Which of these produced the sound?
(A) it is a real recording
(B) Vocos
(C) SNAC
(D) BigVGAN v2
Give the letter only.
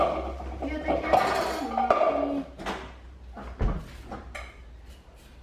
A